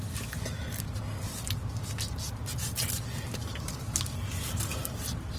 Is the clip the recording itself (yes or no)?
yes